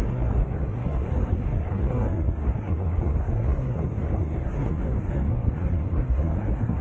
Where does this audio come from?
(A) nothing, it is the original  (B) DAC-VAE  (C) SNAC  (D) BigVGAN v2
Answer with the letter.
C